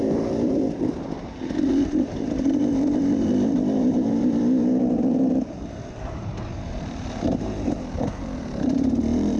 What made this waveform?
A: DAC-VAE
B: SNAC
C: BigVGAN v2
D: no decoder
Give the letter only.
C